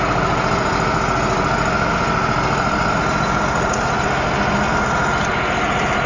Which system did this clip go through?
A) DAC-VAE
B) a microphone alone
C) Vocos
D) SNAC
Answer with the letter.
B